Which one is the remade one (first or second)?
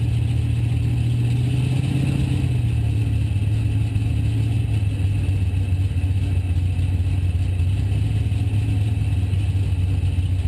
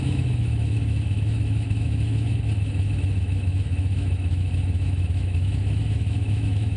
second